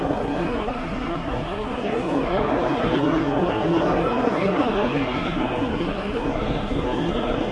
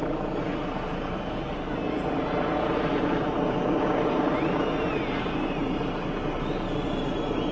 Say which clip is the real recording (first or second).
second